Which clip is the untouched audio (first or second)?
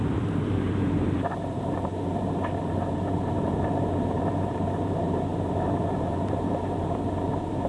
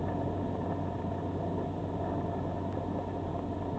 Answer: second